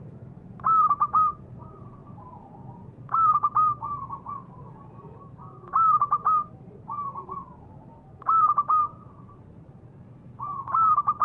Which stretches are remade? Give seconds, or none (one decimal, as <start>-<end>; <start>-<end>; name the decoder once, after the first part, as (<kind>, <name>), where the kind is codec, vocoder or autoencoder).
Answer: 0.0-5.7 (vocoder, BigVGAN v2); 6.5-11.2